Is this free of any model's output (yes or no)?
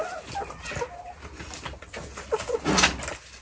yes